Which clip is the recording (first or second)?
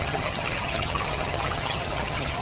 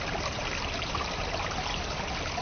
second